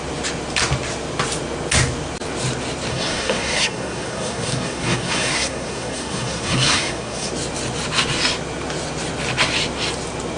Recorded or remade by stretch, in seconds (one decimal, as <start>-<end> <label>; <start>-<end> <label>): 0.0-2.9 recorded; 2.9-7.3 remade; 7.3-10.4 recorded